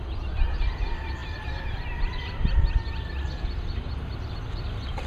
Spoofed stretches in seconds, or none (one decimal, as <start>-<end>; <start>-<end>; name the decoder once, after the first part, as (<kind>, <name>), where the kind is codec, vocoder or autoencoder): none